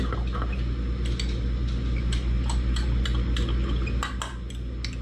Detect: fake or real real